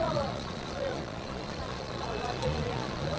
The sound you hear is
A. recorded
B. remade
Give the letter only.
B